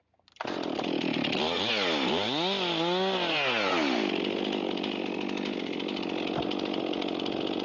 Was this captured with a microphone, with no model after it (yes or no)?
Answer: yes